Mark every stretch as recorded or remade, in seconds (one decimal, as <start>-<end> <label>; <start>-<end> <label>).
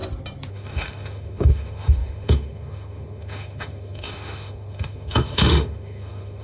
0.0-0.5 recorded; 0.5-6.4 remade